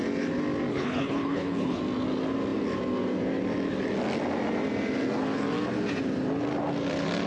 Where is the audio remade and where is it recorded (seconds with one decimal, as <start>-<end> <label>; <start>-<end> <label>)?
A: 0.0-0.7 recorded; 0.7-1.8 remade; 1.8-7.3 recorded